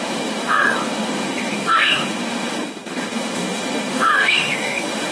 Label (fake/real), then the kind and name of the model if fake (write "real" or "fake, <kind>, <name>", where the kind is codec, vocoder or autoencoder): fake, autoencoder, DAC-VAE